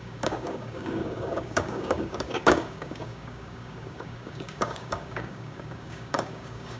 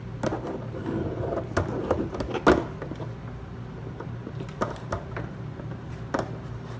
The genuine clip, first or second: second